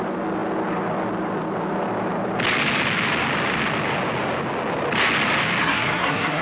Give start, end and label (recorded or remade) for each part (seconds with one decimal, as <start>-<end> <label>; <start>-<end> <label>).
0.0-5.6 recorded; 5.6-6.4 remade